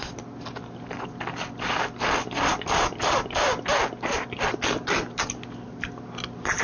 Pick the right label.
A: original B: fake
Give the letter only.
A